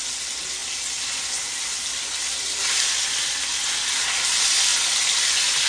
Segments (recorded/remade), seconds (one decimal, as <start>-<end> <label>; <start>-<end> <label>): 0.0-5.7 recorded